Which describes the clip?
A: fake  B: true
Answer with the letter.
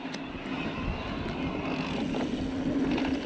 B